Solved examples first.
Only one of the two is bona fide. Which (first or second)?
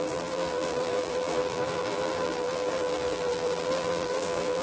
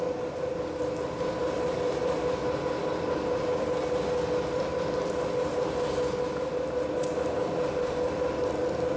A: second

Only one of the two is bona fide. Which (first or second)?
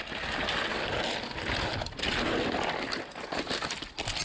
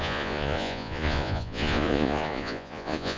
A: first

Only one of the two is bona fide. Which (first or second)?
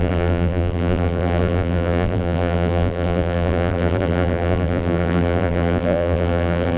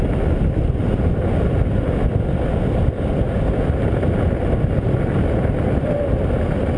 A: second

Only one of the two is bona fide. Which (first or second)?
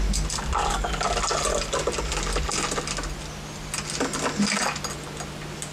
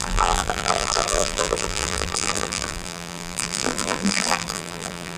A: first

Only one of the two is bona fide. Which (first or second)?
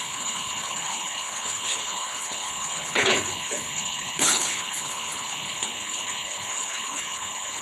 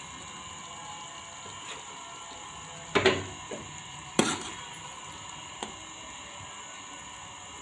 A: second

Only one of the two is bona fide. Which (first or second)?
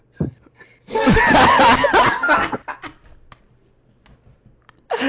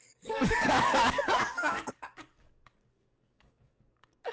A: first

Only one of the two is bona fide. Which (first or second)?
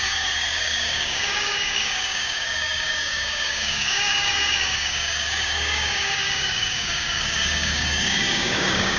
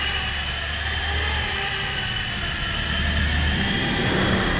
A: second